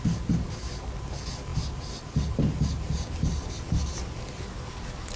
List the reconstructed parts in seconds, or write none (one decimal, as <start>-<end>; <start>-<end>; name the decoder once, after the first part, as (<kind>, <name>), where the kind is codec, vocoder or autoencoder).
none

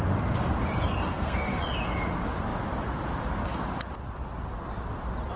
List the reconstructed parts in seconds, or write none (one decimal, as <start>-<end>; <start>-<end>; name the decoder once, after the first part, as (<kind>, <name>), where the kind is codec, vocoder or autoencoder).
1.1-1.6 (codec, SNAC)

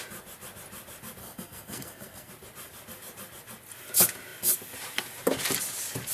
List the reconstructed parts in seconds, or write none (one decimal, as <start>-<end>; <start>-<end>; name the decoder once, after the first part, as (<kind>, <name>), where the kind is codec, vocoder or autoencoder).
1.2-2.3 (codec, SNAC)

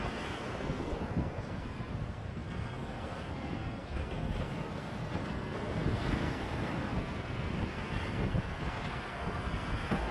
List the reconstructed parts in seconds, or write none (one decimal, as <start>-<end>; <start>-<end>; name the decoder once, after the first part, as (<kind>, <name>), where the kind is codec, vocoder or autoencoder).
0.0-10.1 (codec, SNAC)

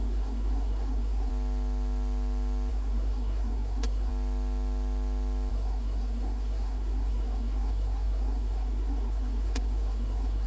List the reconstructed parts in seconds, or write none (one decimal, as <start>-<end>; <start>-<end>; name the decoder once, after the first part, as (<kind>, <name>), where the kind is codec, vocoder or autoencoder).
0.0-1.3 (codec, SNAC); 2.7-4.1; 5.5-10.5

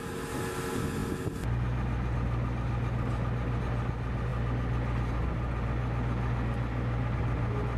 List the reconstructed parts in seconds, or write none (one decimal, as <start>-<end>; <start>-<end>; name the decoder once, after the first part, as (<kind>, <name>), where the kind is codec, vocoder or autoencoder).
none

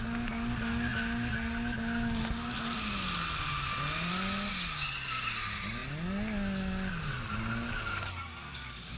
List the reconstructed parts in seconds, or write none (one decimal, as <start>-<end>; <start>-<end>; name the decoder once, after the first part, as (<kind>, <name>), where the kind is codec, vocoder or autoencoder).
none

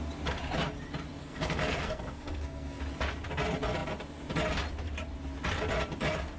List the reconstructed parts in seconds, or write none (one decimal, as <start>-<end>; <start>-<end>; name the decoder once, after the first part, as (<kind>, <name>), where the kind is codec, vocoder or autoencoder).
1.2-2.8 (codec, SNAC)